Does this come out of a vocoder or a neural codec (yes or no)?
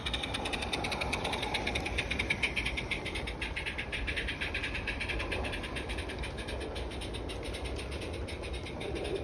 yes